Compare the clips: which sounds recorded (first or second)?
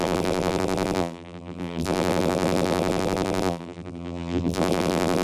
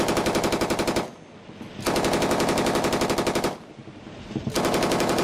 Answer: second